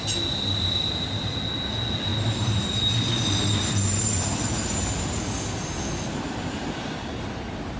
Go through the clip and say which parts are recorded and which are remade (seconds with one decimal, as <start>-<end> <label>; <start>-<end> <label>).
0.0-7.8 recorded